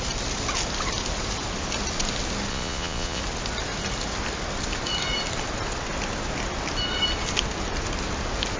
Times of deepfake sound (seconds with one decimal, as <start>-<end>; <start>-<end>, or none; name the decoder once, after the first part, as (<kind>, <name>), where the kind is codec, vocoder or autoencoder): 2.5-3.2 (vocoder, Vocos)